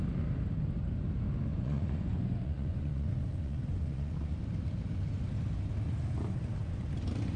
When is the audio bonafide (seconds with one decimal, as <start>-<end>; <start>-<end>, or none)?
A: 0.0-1.5; 4.4-7.4